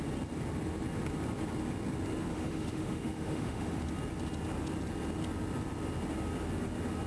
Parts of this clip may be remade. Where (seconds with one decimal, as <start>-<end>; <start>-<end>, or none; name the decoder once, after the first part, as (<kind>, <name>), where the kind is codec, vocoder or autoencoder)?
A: 2.3-3.8 (autoencoder, DAC-VAE)